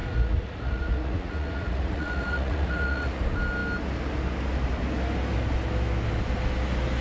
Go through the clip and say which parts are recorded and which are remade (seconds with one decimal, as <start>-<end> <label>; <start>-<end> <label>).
0.0-3.2 remade; 3.2-7.0 recorded